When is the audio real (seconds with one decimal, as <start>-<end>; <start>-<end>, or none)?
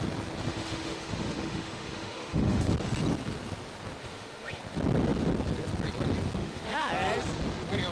0.0-0.5; 2.7-4.0; 4.6-6.4; 6.9-7.9